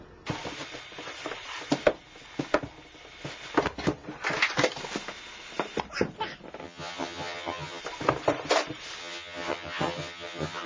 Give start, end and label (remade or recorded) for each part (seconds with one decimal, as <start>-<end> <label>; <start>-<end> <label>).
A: 0.0-6.6 recorded; 6.6-7.8 remade; 7.8-9.0 recorded; 9.0-10.7 remade